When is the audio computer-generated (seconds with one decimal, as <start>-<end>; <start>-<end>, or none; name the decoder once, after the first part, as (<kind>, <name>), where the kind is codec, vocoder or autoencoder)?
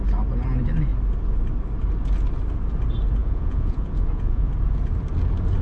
3.2-4.5 (vocoder, Vocos)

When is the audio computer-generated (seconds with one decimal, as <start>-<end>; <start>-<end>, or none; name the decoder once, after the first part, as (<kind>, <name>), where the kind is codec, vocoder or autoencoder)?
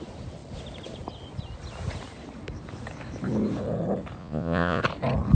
4.2-4.8 (vocoder, Vocos)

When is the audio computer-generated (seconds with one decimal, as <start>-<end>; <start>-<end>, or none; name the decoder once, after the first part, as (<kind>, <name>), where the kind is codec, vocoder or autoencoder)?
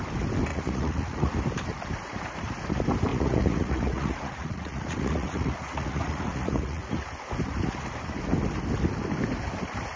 0.5-1.3 (vocoder, Vocos); 3.1-7.1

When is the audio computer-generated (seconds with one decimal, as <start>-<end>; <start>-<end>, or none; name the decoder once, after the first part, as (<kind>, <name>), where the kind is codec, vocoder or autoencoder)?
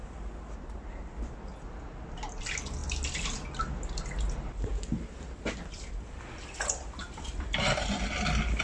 none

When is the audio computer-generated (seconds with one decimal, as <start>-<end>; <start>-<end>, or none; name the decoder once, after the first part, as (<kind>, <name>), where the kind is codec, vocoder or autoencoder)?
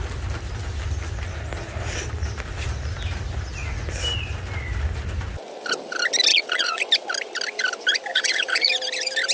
6.3-6.8 (vocoder, Vocos); 8.1-8.7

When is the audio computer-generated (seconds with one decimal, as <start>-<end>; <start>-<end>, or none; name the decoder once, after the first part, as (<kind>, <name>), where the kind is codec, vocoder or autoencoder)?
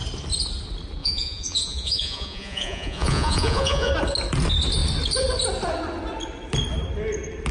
1.0-3.9 (vocoder, Vocos)